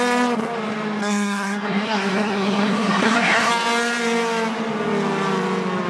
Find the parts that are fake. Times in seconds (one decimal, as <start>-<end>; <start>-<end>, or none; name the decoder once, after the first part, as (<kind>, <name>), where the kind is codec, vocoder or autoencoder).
1.0-3.5 (codec, SNAC)